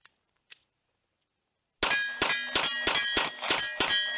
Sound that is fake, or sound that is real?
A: real